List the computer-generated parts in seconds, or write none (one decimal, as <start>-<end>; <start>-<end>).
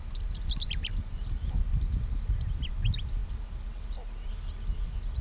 0.9-1.4